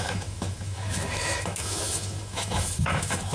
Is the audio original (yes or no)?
no